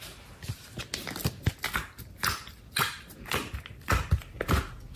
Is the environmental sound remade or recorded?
recorded